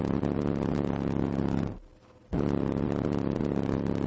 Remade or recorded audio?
recorded